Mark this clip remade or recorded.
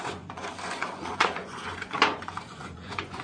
remade